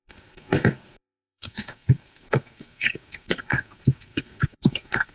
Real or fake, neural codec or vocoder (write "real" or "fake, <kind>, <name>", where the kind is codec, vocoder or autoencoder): fake, codec, SNAC